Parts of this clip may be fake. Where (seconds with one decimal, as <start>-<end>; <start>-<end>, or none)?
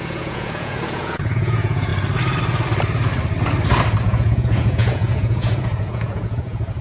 0.0-1.9; 4.0-6.8